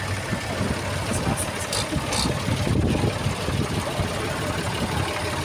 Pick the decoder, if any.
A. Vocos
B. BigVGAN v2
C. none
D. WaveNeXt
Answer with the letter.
C